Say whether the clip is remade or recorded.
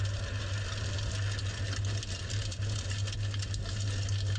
recorded